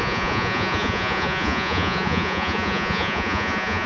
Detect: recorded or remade remade